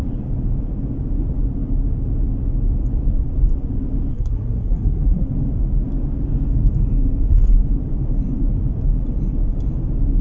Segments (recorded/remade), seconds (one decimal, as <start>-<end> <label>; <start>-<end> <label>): 0.0-4.1 recorded; 4.1-5.3 remade; 5.3-10.2 recorded